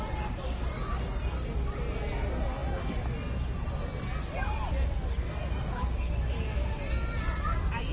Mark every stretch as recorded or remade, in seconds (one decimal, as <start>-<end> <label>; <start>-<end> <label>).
0.0-7.9 recorded